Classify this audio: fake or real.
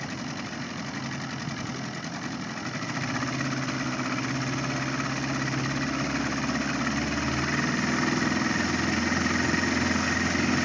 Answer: real